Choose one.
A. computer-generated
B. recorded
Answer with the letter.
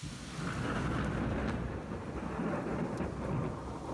B